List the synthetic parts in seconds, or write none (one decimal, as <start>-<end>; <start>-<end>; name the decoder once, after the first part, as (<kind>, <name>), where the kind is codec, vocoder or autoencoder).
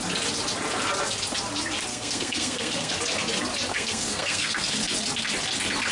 1.9-2.9 (codec, SNAC); 3.7-4.7